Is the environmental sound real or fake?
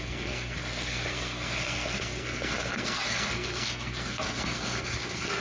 fake